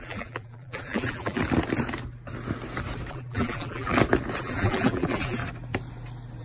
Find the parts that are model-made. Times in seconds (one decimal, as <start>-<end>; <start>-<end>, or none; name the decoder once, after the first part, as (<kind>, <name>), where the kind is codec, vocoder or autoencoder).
0.0-1.4 (vocoder, BigVGAN v2); 3.1-3.9; 4.4-5.4